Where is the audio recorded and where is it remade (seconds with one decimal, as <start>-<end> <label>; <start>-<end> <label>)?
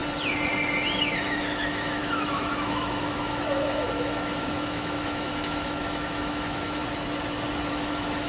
0.0-1.0 recorded; 1.0-6.8 remade; 6.8-7.7 recorded; 7.7-8.3 remade